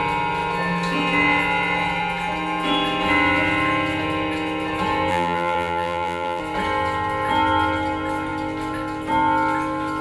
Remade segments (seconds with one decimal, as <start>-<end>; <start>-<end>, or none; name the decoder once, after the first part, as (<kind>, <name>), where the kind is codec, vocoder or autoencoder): 5.1-6.4 (vocoder, BigVGAN v2)